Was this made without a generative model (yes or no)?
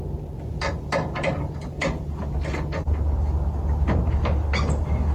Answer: yes